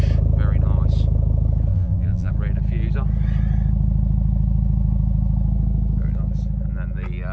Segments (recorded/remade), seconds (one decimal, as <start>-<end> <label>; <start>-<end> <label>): 0.0-1.7 recorded; 1.7-2.3 remade; 2.3-7.3 recorded